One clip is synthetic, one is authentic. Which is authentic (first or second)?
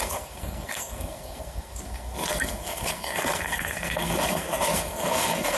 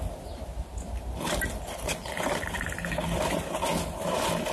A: second